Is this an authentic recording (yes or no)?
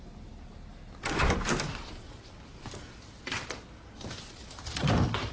yes